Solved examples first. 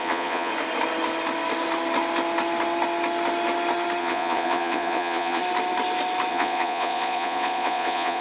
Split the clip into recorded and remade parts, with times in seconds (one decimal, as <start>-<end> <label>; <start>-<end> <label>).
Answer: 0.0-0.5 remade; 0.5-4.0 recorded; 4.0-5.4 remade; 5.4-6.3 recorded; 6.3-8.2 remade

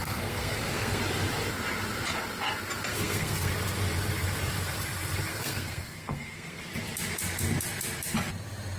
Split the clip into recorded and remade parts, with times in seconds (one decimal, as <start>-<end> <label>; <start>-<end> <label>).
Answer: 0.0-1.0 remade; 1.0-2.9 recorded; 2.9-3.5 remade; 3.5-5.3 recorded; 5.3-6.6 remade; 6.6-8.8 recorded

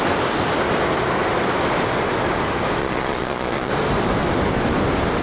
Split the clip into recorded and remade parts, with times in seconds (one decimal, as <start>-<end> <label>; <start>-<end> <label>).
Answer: 0.0-2.8 recorded; 2.8-3.7 remade; 3.7-5.2 recorded

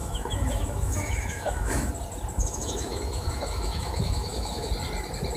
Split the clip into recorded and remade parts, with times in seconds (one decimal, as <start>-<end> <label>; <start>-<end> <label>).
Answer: 0.0-1.9 remade; 1.9-2.4 recorded; 2.4-4.7 remade; 4.7-5.4 recorded

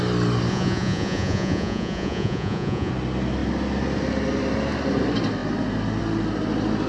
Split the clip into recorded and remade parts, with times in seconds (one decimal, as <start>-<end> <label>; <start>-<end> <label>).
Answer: 0.0-0.5 recorded; 0.5-2.9 remade; 2.9-6.9 recorded

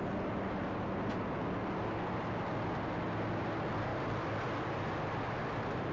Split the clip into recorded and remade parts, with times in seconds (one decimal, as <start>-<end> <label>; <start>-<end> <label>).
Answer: 0.0-5.9 recorded